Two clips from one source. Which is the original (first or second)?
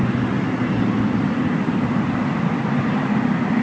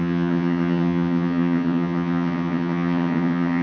first